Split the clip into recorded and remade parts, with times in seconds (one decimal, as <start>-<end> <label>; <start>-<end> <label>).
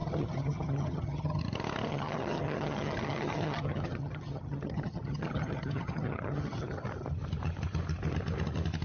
0.0-1.4 remade; 1.4-1.9 recorded; 1.9-6.8 remade; 6.8-8.8 recorded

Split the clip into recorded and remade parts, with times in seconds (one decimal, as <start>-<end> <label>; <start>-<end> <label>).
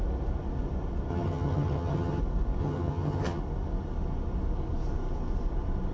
0.0-1.1 recorded; 1.1-2.2 remade; 2.2-2.6 recorded; 2.6-3.4 remade; 3.4-5.9 recorded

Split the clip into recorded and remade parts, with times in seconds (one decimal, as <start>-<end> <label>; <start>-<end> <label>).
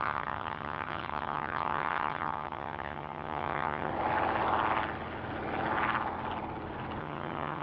0.0-3.9 remade; 3.9-7.0 recorded; 7.0-7.6 remade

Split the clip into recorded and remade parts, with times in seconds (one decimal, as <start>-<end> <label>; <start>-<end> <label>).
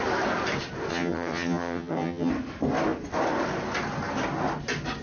0.0-0.9 recorded; 0.9-2.3 remade; 2.3-5.0 recorded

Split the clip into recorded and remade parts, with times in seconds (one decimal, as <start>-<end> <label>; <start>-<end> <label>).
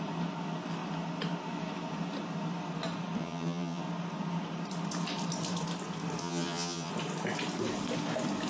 0.0-3.2 recorded; 3.2-3.8 remade; 3.8-6.2 recorded; 6.2-6.9 remade; 6.9-8.5 recorded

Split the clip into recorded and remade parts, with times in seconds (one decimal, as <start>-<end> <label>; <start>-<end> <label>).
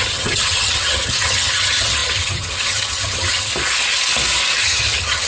0.0-3.5 remade; 3.5-4.6 recorded; 4.6-5.3 remade